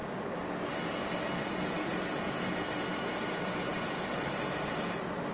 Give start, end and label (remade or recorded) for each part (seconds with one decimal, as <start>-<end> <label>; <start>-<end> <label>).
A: 0.0-1.5 recorded; 1.5-2.7 remade; 2.7-5.3 recorded